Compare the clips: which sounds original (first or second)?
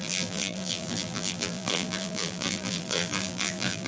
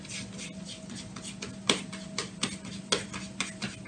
second